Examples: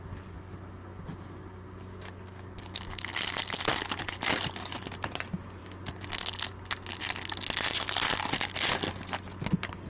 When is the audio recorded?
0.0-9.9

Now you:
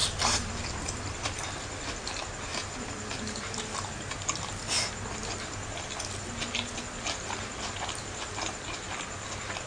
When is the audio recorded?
1.9-2.5; 3.9-9.7